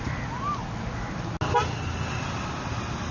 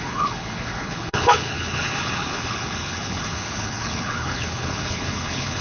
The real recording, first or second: first